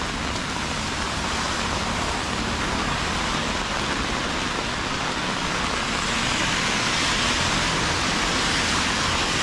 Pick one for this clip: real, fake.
real